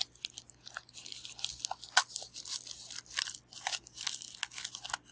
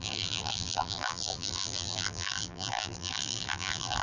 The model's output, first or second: second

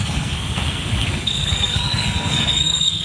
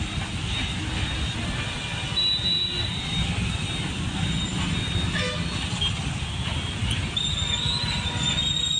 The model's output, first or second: first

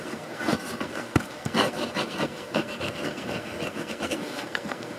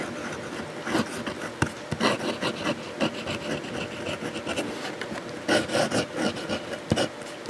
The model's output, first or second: first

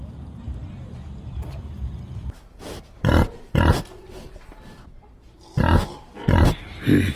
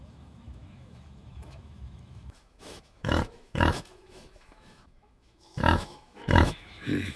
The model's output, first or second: second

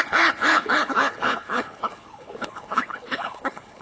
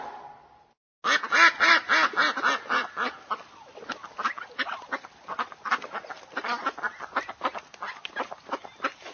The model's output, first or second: first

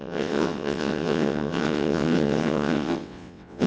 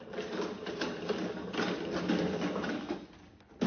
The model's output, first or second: first